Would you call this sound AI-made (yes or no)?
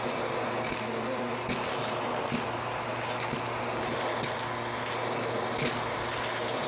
no